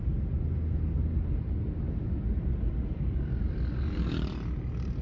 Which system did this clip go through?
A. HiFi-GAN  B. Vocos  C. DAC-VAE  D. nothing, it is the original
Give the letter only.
D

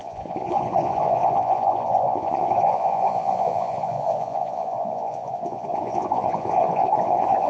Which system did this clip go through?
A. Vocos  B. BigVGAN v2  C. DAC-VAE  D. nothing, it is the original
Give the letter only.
A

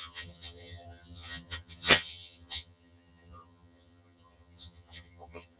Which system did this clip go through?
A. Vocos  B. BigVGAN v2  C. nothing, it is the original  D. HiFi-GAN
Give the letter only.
D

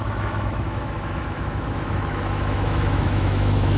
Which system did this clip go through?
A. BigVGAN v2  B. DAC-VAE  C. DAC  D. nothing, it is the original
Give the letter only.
B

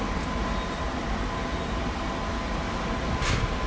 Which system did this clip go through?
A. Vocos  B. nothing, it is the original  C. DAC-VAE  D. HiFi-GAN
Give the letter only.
B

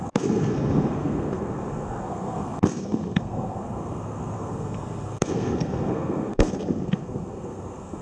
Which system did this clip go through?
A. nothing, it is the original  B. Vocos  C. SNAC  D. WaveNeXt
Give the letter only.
C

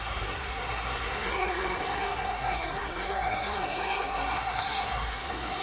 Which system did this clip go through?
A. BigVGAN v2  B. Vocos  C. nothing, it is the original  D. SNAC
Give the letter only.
D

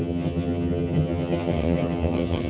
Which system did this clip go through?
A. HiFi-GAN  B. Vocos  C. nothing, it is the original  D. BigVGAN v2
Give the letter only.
A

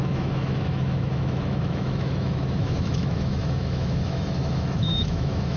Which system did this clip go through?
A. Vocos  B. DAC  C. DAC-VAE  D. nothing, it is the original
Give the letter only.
C